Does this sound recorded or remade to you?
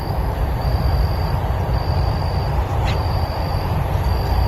remade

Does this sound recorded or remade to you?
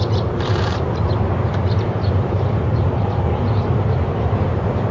remade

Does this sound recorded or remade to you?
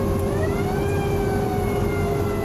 recorded